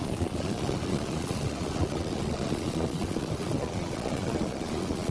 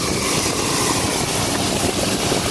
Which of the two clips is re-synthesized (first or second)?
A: first